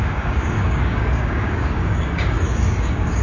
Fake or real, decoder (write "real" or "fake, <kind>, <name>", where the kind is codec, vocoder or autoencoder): fake, codec, DAC